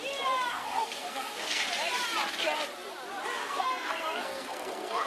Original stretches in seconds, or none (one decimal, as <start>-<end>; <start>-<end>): 0.0-0.5; 1.6-3.4